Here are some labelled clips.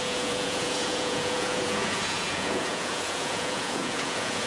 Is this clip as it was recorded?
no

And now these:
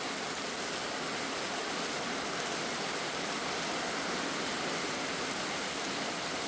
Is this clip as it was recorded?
yes